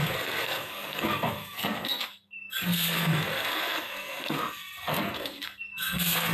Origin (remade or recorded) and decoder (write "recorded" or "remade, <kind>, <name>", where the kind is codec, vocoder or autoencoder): remade, codec, SNAC